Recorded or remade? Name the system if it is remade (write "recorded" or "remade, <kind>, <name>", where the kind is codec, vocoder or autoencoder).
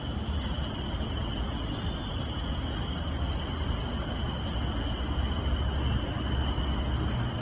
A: recorded